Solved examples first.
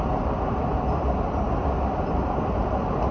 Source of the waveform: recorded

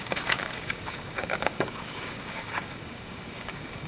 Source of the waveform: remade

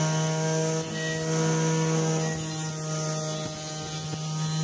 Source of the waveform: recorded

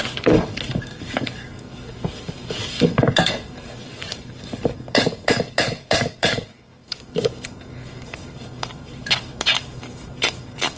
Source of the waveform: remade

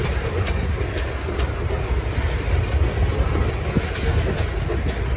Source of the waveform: recorded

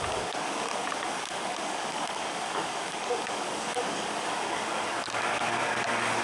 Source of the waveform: remade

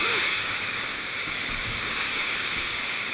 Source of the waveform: remade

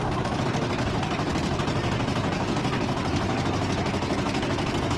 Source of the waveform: recorded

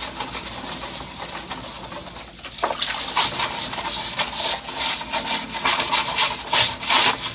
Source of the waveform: recorded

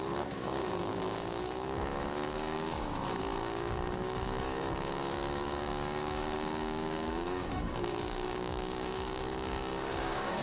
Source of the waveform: remade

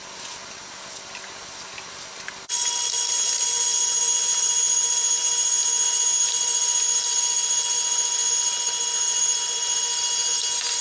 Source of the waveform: recorded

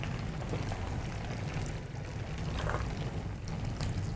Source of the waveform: recorded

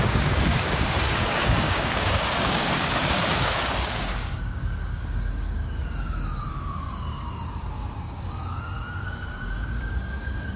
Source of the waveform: remade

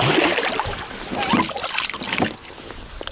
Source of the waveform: recorded